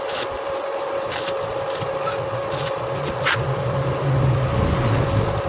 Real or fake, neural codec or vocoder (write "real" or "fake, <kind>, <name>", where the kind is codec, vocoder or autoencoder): real